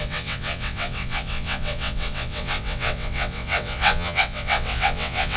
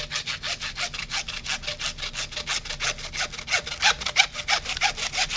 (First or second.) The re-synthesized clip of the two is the first